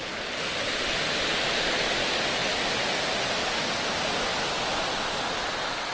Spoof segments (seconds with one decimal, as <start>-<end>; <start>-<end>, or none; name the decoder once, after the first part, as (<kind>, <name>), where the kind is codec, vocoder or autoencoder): 0.6-1.3 (vocoder, BigVGAN v2)

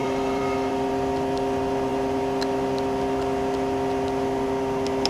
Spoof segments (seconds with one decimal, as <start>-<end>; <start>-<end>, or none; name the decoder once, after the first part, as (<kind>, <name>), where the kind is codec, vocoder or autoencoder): 0.0-0.7 (vocoder, BigVGAN v2)

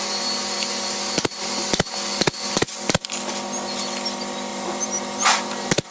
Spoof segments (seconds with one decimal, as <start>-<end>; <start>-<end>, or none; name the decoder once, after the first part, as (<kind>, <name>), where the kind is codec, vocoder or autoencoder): 4.5-5.9 (vocoder, BigVGAN v2)

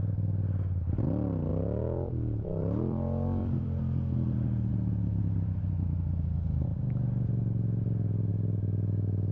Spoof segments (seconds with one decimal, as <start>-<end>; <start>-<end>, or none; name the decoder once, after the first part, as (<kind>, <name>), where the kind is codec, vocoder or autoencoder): 1.5-3.8 (vocoder, BigVGAN v2); 4.7-5.7; 6.7-8.3

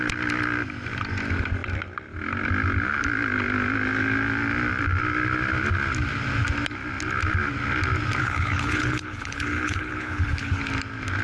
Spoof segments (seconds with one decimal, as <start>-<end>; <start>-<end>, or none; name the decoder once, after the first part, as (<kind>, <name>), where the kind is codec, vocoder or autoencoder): 8.2-10.6 (codec, HILCodec)

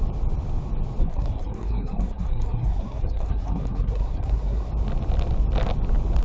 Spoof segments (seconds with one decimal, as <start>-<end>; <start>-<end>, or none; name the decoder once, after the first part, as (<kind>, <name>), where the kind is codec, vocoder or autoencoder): 1.0-4.7 (codec, SNAC)

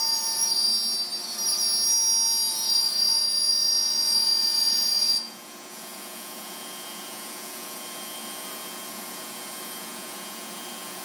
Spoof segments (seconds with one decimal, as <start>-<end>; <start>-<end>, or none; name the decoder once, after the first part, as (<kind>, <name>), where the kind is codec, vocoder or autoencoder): 0.0-0.7 (vocoder, Vocos); 2.5-11.0